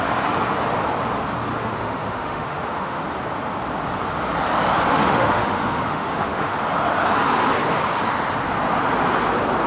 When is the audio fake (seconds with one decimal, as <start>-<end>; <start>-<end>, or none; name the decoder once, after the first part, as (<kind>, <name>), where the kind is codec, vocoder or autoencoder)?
1.5-3.0 (autoencoder, DAC-VAE); 4.9-6.6